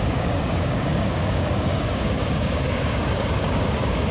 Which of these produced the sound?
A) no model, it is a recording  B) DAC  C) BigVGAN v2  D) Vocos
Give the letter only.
B